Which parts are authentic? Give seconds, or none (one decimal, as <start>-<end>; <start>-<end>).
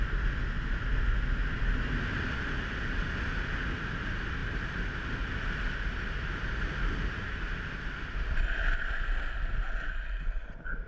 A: 0.0-10.9